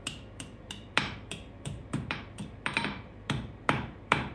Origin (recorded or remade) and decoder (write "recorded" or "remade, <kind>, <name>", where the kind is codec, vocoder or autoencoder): remade, vocoder, BigVGAN v2